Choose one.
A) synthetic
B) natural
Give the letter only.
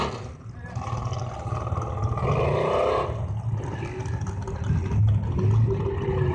B